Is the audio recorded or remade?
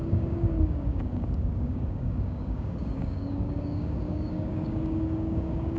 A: remade